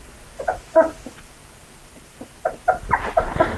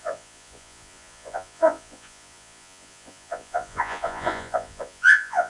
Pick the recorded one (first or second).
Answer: first